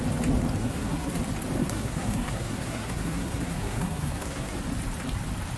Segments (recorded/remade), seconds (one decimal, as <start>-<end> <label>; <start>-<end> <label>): 0.0-0.6 recorded; 0.6-1.2 remade; 1.2-1.6 recorded; 1.6-4.6 remade; 4.6-5.6 recorded